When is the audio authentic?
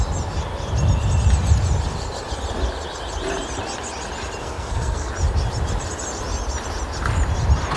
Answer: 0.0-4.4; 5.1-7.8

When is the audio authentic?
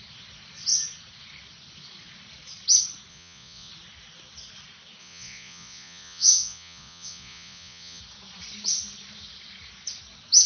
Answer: 0.0-3.1; 3.7-5.0; 8.0-10.5